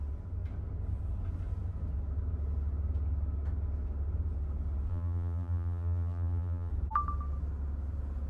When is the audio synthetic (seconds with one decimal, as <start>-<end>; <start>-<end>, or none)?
4.9-6.7

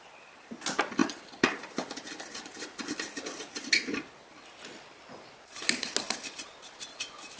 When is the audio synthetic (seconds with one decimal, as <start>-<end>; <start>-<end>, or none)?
1.0-3.7

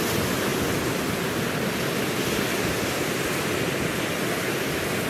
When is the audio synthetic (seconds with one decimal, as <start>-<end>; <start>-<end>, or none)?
none

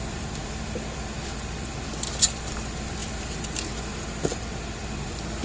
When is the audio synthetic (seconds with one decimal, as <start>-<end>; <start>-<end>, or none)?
0.0-5.4

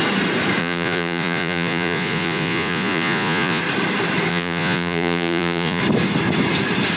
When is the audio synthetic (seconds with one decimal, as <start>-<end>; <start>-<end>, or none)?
0.6-3.6; 4.3-5.8

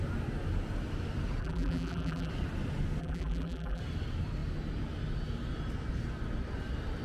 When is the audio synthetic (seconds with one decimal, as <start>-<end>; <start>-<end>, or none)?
1.4-2.3; 3.0-3.8

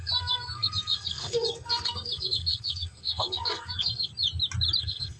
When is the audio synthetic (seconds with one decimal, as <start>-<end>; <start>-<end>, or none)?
0.0-4.1; 4.8-5.2

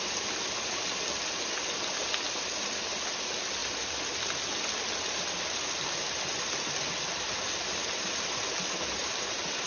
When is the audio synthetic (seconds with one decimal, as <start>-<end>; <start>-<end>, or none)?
none